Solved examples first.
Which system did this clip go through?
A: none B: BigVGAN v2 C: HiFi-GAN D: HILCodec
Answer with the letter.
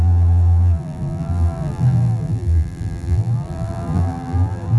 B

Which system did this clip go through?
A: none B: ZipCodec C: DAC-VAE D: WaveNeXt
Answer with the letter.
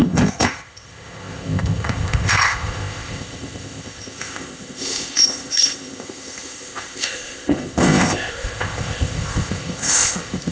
B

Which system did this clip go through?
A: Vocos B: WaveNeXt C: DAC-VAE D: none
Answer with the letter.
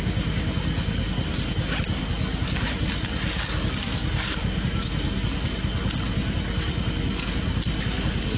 D